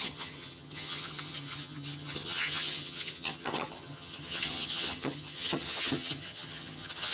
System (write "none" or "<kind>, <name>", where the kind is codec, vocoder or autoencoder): vocoder, HiFi-GAN